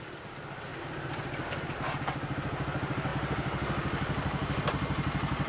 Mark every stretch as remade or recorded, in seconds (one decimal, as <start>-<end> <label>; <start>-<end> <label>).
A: 0.0-0.7 recorded; 0.7-1.8 remade; 1.8-5.5 recorded